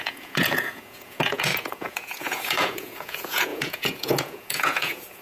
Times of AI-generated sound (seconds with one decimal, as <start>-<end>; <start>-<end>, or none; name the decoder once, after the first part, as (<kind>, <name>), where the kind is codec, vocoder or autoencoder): 0.0-5.2 (vocoder, Vocos)